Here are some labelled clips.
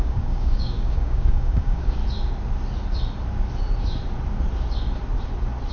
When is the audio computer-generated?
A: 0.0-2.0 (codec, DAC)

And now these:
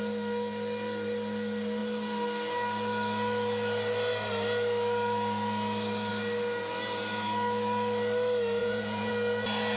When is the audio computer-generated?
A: 8.6-9.1 (vocoder, Vocos)